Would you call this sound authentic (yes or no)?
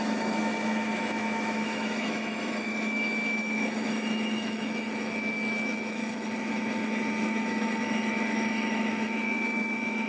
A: no